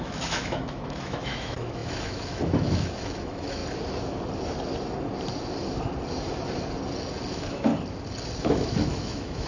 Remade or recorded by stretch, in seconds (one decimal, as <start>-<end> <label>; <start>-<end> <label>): 0.0-3.6 remade; 3.6-7.3 recorded; 7.3-7.7 remade; 7.7-8.4 recorded; 8.4-9.5 remade